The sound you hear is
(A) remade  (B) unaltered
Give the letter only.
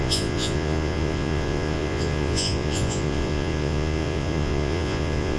A